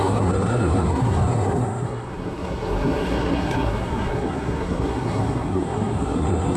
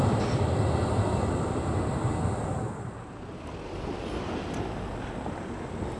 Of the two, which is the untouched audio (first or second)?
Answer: second